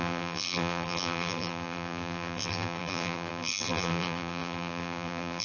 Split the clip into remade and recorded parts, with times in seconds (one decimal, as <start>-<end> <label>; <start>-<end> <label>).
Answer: 0.0-5.4 remade